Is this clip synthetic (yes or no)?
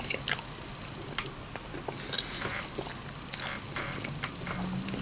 no